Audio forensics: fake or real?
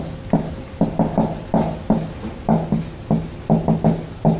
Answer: real